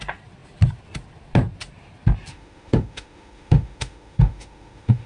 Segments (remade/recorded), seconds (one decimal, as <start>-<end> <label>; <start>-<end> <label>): 0.0-2.3 recorded; 2.3-5.1 remade